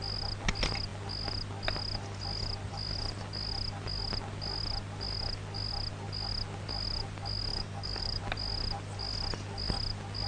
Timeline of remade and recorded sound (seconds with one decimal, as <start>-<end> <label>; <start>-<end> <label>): 0.0-7.5 recorded; 7.5-8.2 remade; 8.2-10.3 recorded